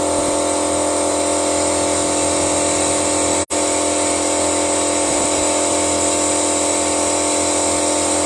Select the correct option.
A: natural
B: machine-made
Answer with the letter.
A